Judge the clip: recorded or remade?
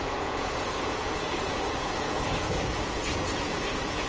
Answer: remade